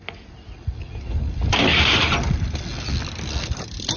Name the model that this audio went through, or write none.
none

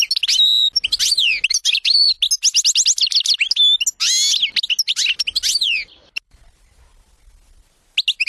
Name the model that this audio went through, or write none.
none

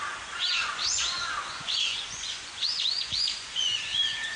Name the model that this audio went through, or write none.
vocoder, Vocos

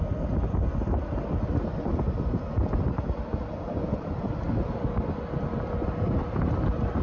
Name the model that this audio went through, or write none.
none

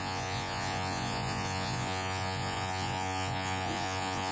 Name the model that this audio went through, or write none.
vocoder, Vocos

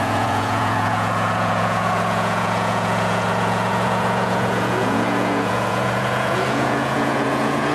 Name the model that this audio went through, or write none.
vocoder, Vocos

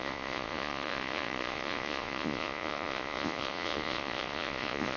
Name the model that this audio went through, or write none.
vocoder, Vocos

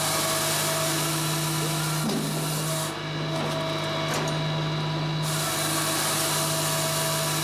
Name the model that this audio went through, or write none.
none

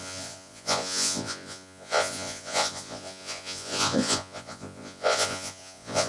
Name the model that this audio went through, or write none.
vocoder, Vocos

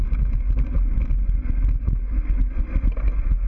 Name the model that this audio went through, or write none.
none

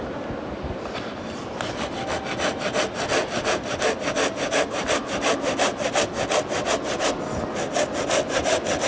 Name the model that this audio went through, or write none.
none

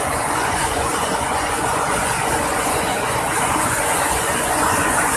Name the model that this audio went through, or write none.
vocoder, Vocos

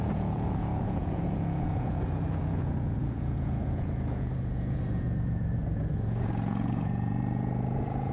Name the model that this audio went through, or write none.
vocoder, Vocos